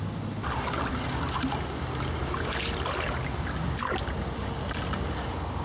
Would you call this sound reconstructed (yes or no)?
no